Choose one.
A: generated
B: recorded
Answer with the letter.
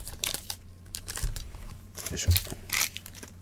A